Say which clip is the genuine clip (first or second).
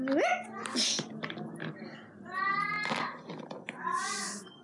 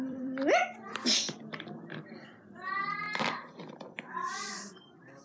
first